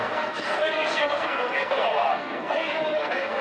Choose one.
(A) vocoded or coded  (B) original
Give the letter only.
A